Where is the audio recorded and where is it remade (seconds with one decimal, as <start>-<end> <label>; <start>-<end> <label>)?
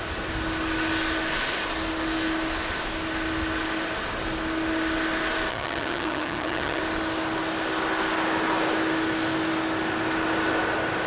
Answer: 0.0-5.5 recorded; 5.5-6.8 remade; 6.8-11.1 recorded